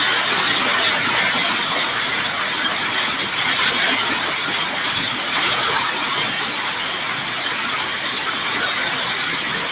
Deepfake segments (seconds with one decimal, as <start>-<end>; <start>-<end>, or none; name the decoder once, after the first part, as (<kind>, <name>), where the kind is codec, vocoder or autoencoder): 0.0-9.7 (vocoder, Vocos)